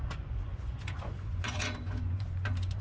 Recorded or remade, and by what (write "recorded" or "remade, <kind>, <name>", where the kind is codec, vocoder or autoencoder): remade, vocoder, Vocos